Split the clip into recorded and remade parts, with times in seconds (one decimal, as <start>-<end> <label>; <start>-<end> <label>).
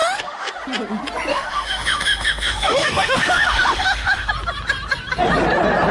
0.0-0.5 remade; 0.5-1.3 recorded; 1.3-4.3 remade; 4.3-5.9 recorded